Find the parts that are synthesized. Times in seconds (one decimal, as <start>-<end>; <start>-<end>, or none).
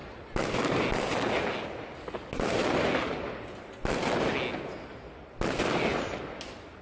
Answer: none